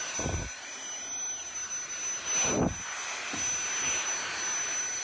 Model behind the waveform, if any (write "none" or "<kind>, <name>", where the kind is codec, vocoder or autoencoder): none